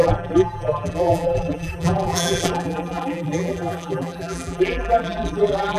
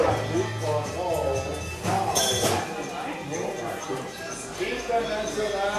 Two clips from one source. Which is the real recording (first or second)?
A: second